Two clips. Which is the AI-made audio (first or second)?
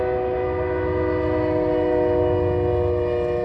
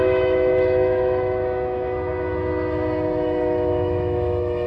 second